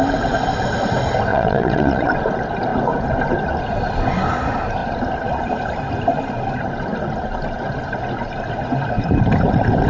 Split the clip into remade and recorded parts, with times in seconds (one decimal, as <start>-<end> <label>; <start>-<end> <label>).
0.0-1.3 recorded; 1.3-2.1 remade; 2.1-9.9 recorded